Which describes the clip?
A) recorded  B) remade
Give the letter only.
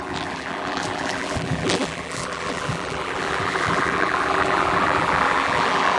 B